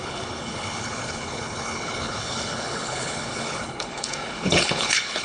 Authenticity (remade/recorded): remade